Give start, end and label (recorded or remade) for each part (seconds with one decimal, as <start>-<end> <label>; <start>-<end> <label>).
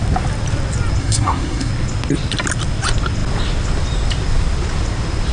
0.0-1.0 recorded; 1.0-1.7 remade; 1.7-5.3 recorded